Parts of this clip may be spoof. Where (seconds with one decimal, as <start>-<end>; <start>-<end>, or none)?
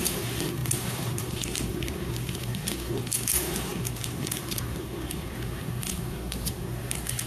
0.0-7.3